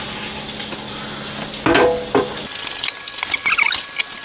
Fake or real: real